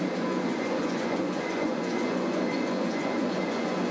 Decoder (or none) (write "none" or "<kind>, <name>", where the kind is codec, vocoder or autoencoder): vocoder, Vocos